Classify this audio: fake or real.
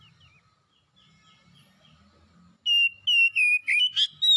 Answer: real